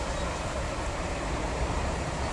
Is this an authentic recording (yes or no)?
yes